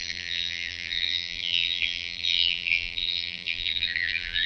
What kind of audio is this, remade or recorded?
remade